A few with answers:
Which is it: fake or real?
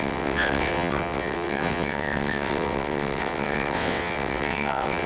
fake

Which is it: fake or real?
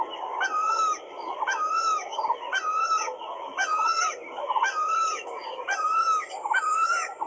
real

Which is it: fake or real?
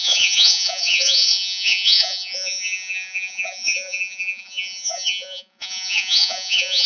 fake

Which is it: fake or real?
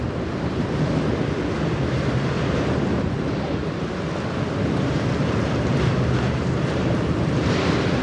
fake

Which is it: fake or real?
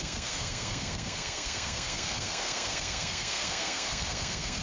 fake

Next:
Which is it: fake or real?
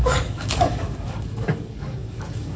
fake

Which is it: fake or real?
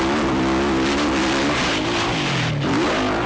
real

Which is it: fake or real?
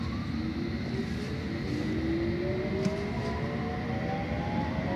real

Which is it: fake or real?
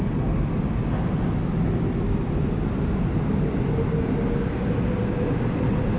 real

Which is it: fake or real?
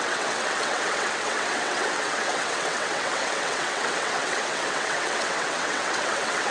fake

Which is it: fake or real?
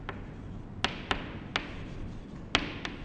real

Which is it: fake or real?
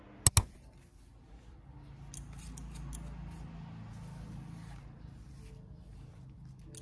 real